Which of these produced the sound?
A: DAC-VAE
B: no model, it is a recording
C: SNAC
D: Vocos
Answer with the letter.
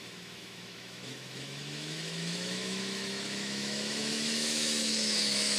A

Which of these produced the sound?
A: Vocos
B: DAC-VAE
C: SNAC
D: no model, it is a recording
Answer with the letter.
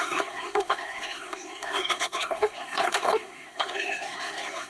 C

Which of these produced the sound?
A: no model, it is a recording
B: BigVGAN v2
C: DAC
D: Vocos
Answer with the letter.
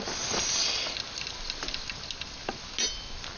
A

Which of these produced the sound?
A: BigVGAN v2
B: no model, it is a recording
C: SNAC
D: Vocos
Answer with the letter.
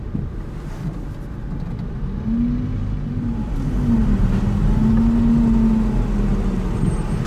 B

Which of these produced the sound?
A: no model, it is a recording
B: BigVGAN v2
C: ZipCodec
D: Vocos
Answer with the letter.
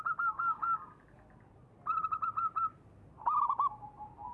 A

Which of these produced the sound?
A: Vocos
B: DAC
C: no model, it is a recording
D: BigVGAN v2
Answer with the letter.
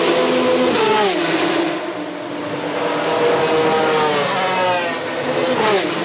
C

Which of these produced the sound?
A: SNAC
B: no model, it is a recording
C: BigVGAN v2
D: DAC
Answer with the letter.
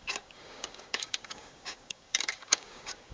D